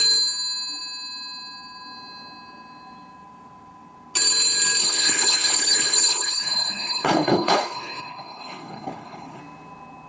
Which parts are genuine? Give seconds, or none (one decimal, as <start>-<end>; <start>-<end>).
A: 0.0-4.8; 9.4-10.1